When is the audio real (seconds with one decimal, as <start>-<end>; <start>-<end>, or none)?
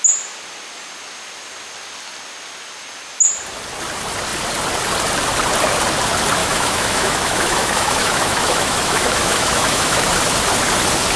0.0-6.4; 10.0-11.2